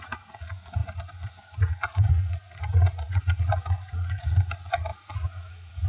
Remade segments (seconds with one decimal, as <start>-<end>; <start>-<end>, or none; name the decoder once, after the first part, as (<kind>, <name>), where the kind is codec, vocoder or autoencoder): 0.0-5.9 (vocoder, Vocos)